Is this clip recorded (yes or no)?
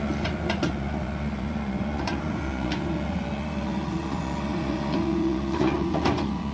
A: no